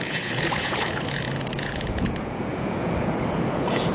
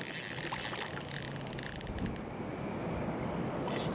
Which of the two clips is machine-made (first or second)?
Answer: first